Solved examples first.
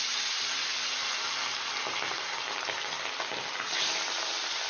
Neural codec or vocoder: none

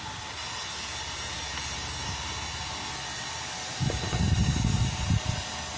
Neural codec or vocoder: none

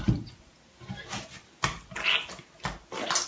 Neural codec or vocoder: none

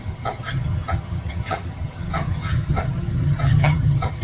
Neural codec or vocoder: vocoder, HiFi-GAN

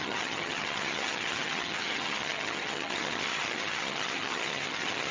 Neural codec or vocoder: vocoder, HiFi-GAN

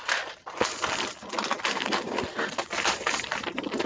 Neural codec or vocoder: none